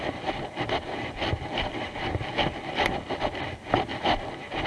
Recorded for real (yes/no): yes